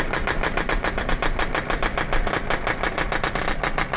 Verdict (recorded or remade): recorded